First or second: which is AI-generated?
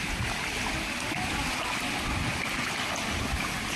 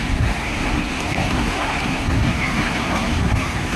second